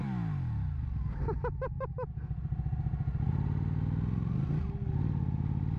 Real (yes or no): yes